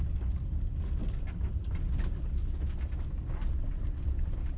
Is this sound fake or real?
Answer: real